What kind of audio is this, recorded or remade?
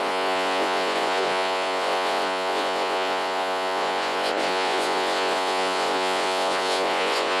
remade